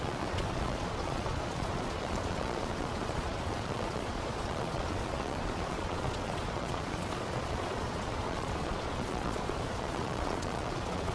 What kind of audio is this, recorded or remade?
remade